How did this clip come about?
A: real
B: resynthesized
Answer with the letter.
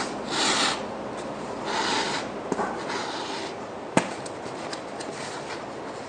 A